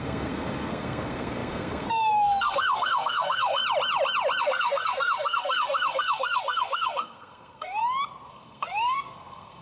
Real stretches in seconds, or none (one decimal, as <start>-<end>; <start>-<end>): 3.6-4.4; 7.8-8.3